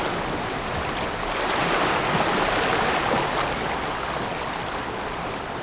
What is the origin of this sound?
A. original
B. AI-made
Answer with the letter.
A